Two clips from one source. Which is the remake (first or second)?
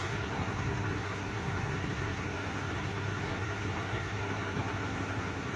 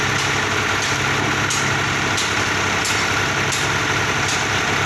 first